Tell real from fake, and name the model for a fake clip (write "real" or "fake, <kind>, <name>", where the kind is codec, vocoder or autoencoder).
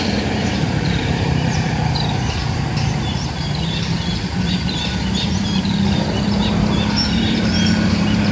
fake, vocoder, BigVGAN v2